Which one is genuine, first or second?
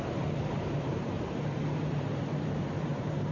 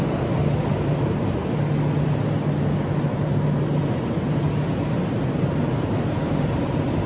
second